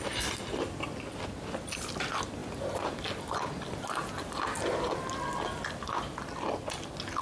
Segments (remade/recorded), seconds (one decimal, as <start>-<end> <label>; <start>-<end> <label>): 0.0-7.2 recorded